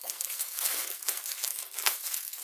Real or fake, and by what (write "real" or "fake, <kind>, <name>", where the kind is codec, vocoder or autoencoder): fake, codec, SNAC